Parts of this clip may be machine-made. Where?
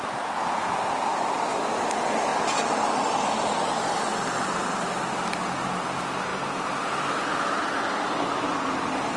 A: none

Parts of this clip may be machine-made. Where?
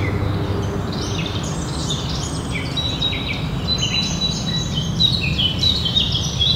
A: 1.8-3.5 (vocoder, BigVGAN v2)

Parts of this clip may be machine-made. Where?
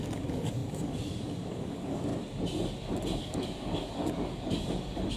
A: 0.0-2.1 (codec, DAC); 3.2-5.2